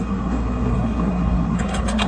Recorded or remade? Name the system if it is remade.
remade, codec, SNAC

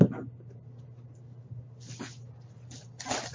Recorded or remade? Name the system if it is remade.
recorded